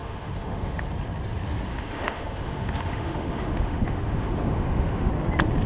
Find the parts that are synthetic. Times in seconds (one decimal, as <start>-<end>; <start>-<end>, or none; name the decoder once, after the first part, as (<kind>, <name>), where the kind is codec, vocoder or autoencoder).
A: 0.0-0.8 (autoencoder, DAC-VAE); 1.7-5.1